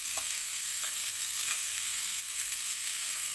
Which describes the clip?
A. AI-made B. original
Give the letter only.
A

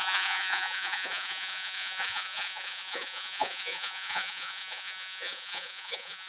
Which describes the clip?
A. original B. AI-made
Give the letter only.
B